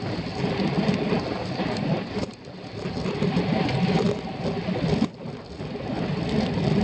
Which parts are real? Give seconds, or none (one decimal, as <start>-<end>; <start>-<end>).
0.0-6.8